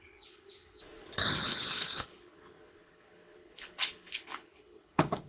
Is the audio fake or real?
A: fake